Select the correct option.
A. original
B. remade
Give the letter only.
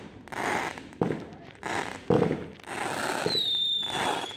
A